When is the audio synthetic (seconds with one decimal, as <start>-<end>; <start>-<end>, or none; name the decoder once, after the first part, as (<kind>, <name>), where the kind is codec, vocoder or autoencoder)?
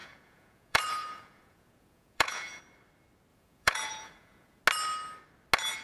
0.0-2.6 (vocoder, Vocos); 3.3-4.6